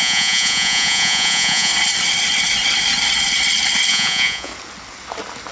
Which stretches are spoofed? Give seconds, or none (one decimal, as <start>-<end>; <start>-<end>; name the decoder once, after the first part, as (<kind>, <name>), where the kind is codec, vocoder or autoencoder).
0.0-1.7 (vocoder, Vocos); 3.9-4.5

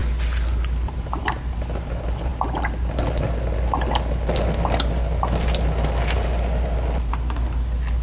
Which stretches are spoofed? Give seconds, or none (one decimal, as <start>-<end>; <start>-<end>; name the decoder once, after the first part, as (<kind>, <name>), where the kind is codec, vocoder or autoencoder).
none

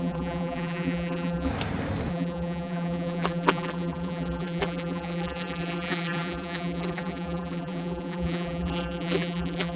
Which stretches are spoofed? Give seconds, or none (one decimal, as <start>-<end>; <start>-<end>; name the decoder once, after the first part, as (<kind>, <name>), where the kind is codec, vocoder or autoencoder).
0.0-1.5 (vocoder, BigVGAN v2); 2.1-9.8

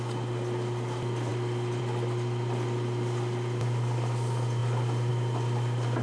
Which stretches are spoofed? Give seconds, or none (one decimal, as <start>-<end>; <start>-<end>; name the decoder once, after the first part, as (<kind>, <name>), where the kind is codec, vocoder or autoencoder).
none